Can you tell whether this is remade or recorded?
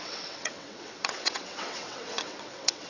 remade